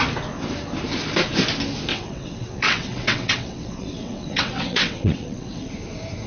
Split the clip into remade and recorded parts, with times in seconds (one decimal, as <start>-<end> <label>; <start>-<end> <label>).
0.0-1.9 recorded; 1.9-5.7 remade; 5.7-6.3 recorded

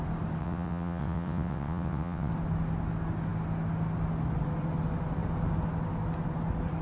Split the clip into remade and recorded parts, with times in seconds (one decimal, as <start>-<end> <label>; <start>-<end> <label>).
0.0-0.4 recorded; 0.4-2.3 remade; 2.3-6.8 recorded

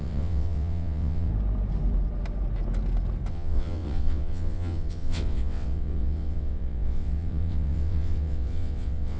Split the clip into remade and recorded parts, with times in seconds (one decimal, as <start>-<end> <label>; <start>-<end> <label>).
0.0-1.3 remade; 1.3-3.3 recorded; 3.3-9.2 remade

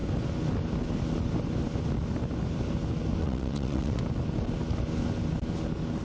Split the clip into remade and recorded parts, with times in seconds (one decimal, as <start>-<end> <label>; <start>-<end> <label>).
0.0-3.2 recorded; 3.2-4.0 remade; 4.0-6.0 recorded

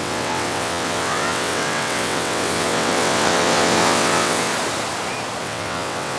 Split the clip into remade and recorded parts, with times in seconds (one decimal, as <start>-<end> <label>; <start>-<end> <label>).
0.0-4.5 remade; 4.5-5.4 recorded; 5.4-6.2 remade

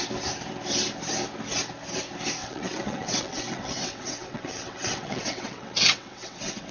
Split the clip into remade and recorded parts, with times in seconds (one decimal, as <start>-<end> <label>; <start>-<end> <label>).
0.0-2.4 recorded; 2.4-6.7 remade

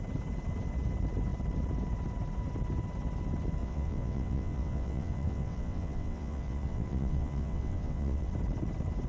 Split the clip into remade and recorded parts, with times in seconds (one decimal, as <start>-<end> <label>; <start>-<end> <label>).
0.0-3.6 recorded; 3.6-8.3 remade; 8.3-9.1 recorded

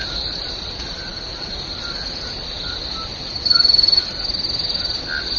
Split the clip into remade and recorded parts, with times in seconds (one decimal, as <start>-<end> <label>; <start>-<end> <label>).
0.0-5.4 recorded